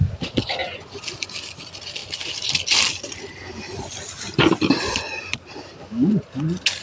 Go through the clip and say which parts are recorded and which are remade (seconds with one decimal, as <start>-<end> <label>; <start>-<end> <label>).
0.0-6.8 recorded